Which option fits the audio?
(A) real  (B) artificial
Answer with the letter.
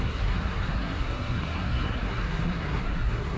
B